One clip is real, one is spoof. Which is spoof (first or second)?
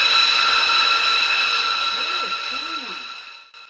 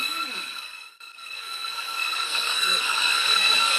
second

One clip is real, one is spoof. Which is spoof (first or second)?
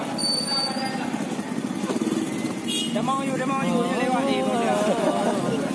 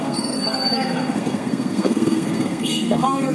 second